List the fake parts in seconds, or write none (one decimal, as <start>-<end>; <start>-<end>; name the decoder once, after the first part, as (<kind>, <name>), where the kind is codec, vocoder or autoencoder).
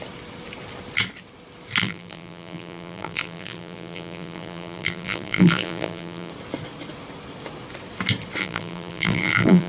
1.8-6.3 (vocoder, BigVGAN v2); 8.4-9.7